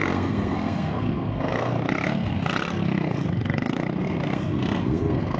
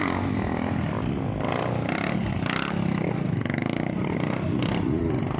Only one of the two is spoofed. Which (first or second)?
first